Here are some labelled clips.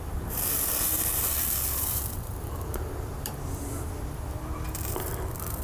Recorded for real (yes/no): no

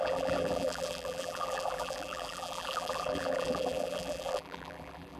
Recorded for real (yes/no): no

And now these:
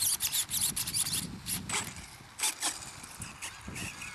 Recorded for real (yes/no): yes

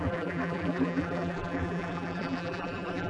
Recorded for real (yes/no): no